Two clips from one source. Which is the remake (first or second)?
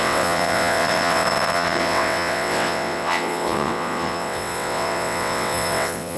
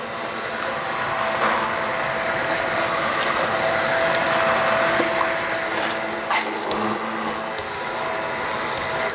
first